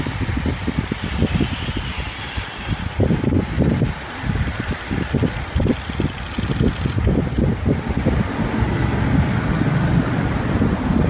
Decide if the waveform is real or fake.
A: real